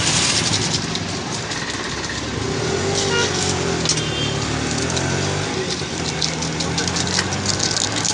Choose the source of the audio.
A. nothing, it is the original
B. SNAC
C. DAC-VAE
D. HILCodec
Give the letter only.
A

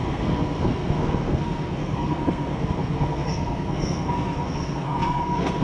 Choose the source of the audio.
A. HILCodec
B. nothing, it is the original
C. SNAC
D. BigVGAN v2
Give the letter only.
C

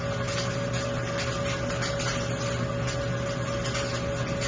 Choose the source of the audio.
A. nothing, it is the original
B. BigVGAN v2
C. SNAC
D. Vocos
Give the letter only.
A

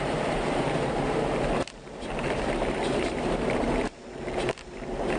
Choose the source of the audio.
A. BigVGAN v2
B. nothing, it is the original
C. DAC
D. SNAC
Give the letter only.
A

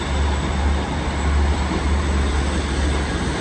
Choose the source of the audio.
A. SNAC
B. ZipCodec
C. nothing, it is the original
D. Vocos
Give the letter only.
C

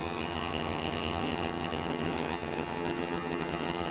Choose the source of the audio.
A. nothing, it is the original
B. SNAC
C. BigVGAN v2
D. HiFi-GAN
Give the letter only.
D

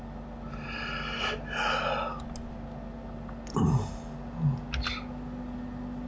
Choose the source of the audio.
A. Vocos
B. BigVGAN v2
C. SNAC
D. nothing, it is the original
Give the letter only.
D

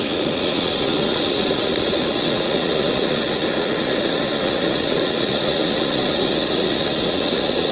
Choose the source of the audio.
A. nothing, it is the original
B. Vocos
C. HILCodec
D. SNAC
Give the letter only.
B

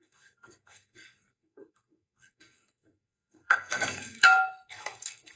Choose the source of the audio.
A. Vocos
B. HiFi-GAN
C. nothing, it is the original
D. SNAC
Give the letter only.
D